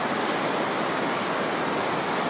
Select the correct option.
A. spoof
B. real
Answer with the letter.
B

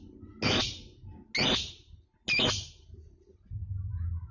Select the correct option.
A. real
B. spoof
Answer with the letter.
A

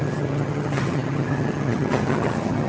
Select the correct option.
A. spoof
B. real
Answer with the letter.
A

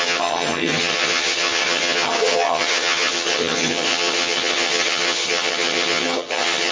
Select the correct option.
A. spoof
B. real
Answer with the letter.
A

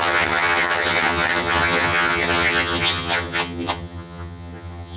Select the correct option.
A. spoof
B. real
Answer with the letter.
A